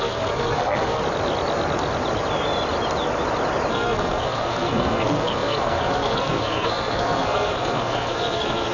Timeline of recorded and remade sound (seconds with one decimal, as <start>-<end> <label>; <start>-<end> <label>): 0.0-1.0 remade; 1.0-3.7 recorded; 3.7-8.7 remade